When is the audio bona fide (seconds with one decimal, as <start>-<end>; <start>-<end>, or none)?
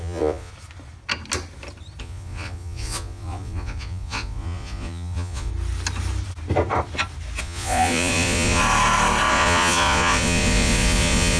0.5-2.0; 5.5-7.4; 8.6-9.3